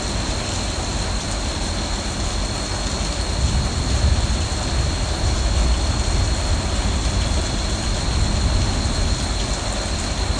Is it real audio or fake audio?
real